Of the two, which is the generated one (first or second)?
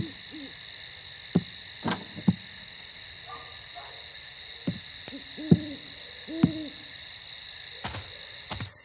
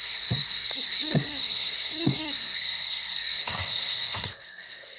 second